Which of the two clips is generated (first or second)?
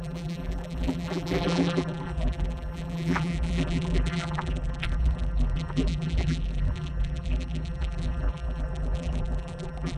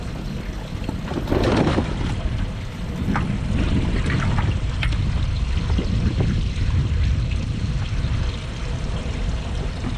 first